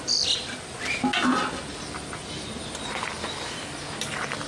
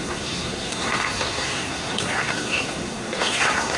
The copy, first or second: second